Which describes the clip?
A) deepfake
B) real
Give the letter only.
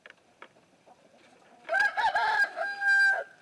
B